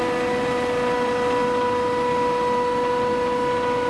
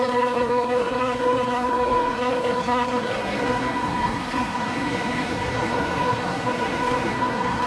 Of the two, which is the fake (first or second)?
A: second